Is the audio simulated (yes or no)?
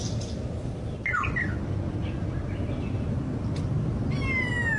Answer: no